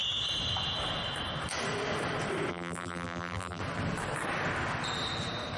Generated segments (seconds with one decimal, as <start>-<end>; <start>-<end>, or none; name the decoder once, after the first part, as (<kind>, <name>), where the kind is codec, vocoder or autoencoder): 2.5-3.6 (vocoder, BigVGAN v2)